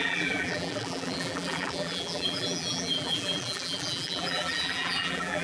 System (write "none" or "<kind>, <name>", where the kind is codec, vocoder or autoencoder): vocoder, BigVGAN v2